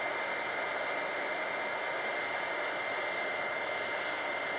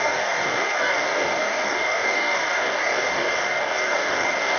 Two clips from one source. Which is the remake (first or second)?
second